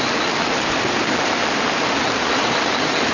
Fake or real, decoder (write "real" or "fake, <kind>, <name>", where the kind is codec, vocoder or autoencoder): real